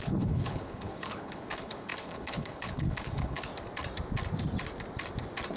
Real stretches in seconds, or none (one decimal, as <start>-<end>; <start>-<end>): 3.5-5.6

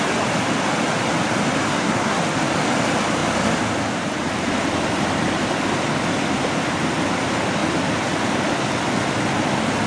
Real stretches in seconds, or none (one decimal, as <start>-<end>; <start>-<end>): 0.0-1.7; 2.2-9.9

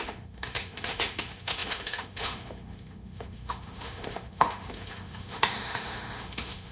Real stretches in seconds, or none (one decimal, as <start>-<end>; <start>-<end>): none

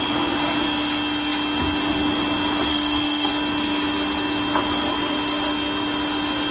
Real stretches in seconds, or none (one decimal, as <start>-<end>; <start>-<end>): 0.0-2.7; 3.3-6.5

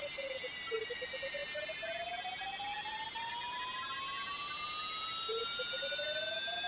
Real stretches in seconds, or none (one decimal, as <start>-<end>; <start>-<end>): 0.0-6.7

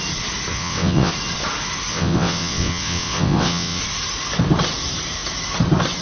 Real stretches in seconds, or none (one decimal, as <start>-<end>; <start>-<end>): 0.0-0.5; 1.1-1.9; 3.8-6.0

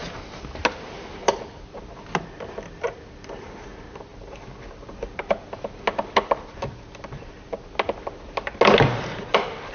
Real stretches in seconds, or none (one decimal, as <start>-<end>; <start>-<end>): 0.0-9.7

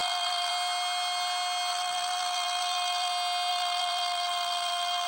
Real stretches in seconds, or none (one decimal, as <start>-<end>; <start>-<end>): 0.5-1.7; 3.1-3.5